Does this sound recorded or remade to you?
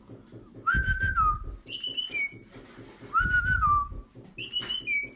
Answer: recorded